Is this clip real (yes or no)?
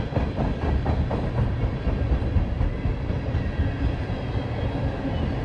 yes